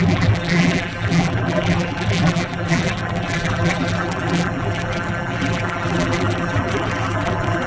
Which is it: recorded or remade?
remade